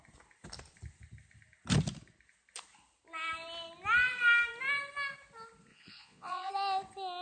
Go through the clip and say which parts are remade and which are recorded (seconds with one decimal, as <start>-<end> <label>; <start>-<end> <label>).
0.0-5.7 recorded; 5.7-6.5 remade; 6.5-7.2 recorded